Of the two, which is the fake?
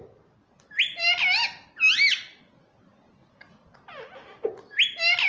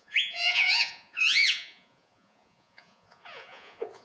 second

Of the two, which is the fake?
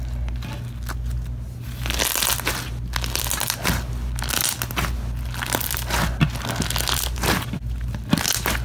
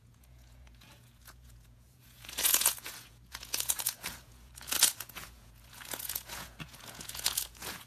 second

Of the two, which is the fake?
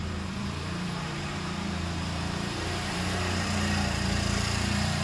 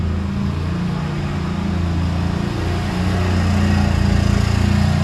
first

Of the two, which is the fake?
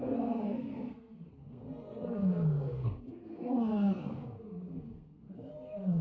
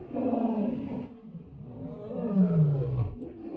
first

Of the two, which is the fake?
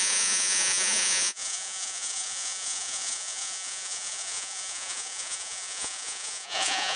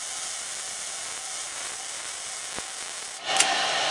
first